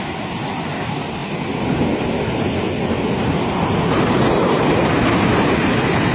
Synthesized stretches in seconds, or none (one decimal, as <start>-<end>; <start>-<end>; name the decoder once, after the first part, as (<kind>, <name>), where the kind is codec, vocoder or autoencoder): none